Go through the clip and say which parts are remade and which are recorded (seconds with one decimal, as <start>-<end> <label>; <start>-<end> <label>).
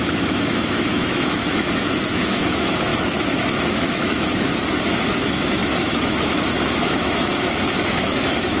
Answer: 0.0-8.6 remade